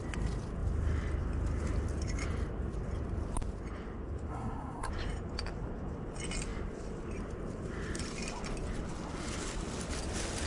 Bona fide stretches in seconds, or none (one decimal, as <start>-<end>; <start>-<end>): 0.0-4.3; 4.9-10.5